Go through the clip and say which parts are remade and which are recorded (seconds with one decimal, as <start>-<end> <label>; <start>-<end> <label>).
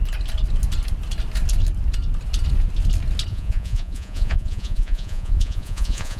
0.0-3.3 recorded; 3.3-6.2 remade